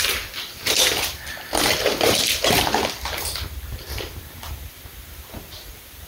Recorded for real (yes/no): no